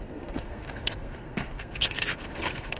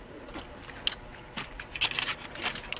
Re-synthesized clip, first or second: first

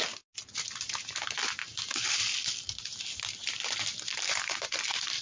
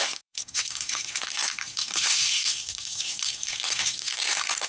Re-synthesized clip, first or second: second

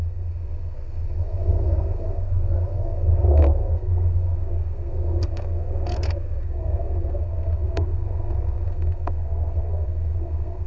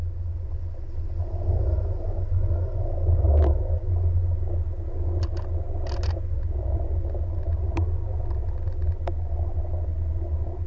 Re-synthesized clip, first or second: first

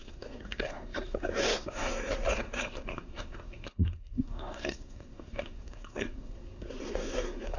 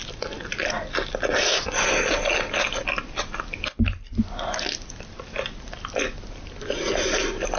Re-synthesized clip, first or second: first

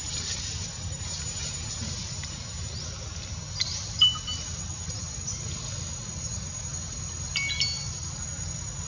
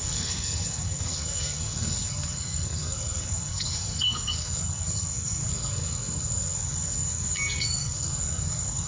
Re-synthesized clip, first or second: second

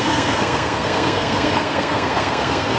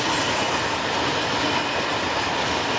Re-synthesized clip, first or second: first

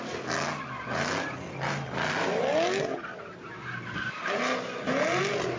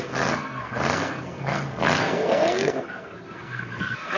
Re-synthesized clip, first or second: second